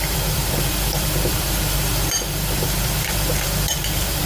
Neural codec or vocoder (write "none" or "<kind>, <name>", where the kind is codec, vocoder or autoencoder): vocoder, BigVGAN v2